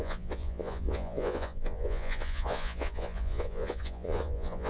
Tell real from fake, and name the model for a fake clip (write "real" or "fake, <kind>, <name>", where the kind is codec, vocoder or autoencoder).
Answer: fake, vocoder, Vocos